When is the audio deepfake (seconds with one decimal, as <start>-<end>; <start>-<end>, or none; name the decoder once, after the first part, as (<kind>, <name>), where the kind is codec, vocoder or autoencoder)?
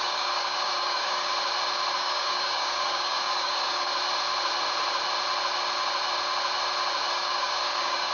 0.0-1.3 (codec, DAC); 1.9-3.9; 7.1-8.1